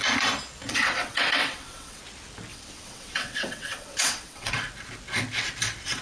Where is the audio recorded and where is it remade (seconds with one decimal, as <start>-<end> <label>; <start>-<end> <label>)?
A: 0.0-0.7 recorded; 0.7-2.0 remade; 2.0-2.5 recorded; 2.5-4.5 remade; 4.5-6.0 recorded